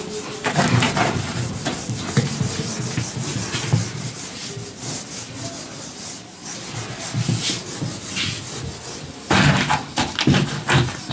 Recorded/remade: recorded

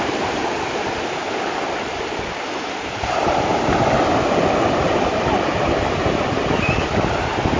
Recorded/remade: recorded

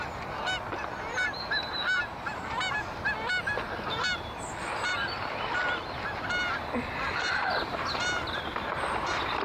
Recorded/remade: recorded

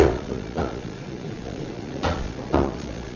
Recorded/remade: remade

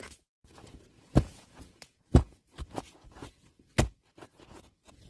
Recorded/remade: remade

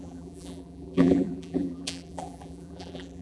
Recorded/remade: remade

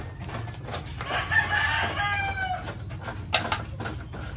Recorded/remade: recorded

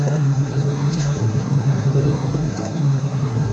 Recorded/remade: remade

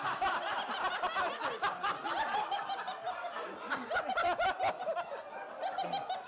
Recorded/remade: recorded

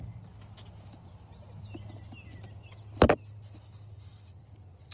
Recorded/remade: recorded